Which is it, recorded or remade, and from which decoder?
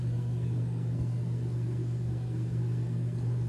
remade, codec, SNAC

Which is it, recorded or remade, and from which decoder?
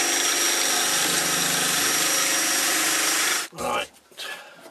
recorded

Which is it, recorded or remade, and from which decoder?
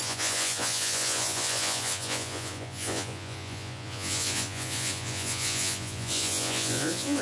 remade, vocoder, Vocos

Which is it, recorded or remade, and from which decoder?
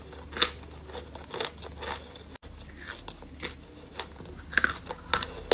recorded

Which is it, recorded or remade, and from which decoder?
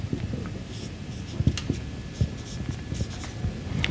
recorded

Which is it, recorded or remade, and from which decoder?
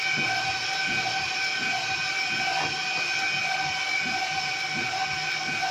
recorded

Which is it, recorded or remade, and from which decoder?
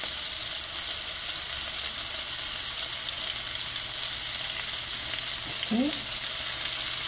recorded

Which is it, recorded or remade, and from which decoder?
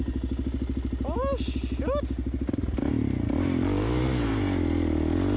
recorded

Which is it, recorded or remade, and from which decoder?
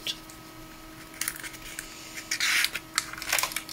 recorded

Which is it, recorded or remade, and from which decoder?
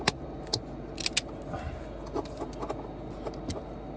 recorded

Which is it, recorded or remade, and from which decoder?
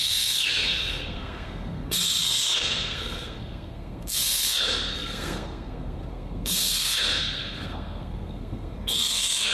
remade, codec, SNAC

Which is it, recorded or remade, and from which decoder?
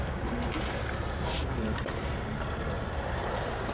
recorded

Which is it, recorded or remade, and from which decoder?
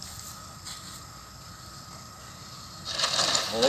recorded